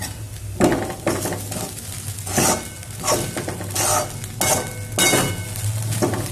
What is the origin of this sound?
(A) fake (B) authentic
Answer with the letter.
B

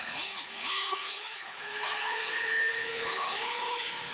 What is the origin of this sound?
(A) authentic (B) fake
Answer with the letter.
B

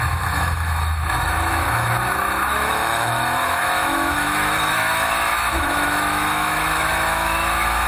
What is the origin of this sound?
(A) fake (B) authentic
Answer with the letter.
A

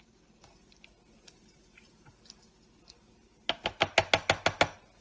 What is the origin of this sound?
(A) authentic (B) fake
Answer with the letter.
A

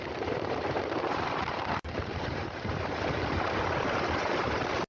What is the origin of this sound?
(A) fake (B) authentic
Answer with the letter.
A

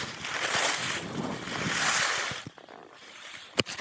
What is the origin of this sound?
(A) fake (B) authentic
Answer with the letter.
B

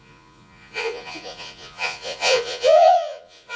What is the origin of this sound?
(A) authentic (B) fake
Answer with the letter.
B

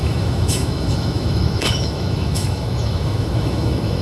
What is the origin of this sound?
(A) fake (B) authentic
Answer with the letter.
A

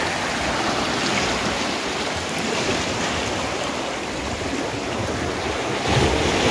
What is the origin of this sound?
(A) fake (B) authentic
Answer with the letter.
B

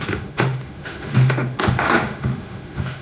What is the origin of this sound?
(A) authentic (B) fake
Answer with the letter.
B